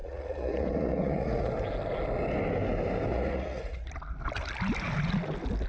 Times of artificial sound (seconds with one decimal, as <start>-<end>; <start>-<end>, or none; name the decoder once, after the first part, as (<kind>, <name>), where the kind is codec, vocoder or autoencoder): 0.0-1.5 (vocoder, Vocos); 3.1-3.9